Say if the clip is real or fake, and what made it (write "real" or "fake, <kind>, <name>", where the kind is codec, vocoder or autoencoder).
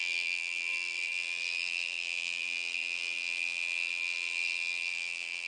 fake, vocoder, BigVGAN v2